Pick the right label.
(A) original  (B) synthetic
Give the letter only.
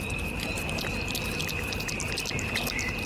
A